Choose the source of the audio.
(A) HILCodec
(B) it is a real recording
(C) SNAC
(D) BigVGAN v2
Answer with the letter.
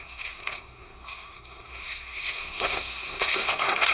C